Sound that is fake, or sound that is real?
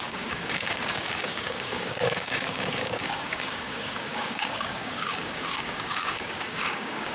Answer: fake